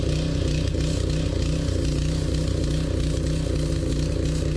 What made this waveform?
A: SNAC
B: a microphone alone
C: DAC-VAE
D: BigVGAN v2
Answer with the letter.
B